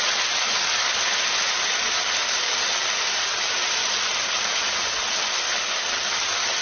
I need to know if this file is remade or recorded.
recorded